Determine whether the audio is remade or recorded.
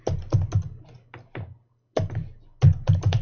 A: recorded